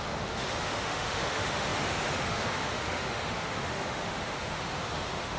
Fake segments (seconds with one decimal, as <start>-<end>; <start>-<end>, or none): 0.0-5.4